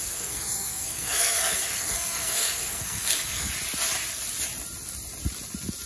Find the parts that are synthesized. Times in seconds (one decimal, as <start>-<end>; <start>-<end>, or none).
0.0-3.5